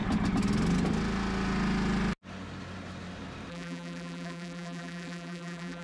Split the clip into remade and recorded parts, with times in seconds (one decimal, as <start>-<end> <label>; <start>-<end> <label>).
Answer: 0.0-3.5 recorded; 3.5-5.8 remade